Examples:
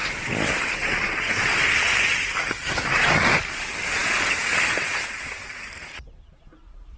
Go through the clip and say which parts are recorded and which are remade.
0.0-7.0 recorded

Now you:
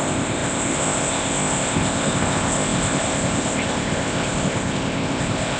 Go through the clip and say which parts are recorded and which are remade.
0.0-5.6 remade

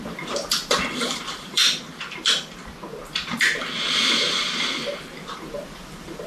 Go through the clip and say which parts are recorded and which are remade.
0.0-1.6 remade; 1.6-5.4 recorded; 5.4-6.3 remade

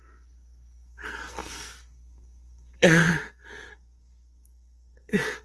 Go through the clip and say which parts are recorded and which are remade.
0.0-5.4 remade

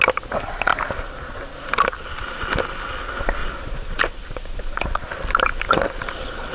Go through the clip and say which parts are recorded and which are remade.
0.0-3.4 recorded; 3.4-5.0 remade; 5.0-6.5 recorded

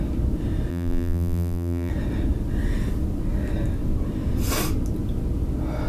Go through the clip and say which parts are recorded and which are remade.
0.0-0.7 recorded; 0.7-1.9 remade; 1.9-5.9 recorded